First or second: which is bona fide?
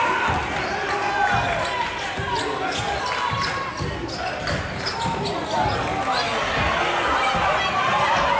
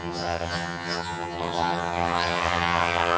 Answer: first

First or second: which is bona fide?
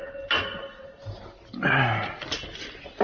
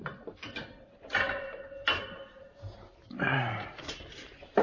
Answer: first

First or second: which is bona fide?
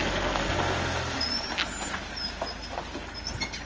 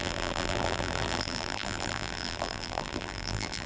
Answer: first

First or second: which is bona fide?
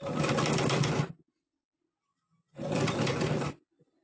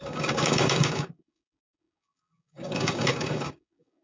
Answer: first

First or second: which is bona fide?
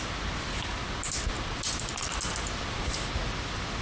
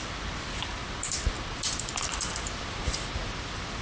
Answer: first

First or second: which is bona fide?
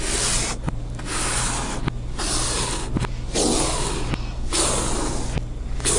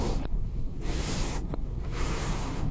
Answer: first